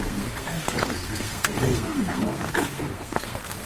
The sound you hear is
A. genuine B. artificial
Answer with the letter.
B